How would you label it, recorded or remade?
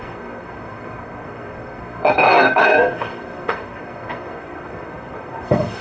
remade